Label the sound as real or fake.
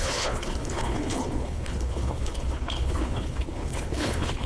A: fake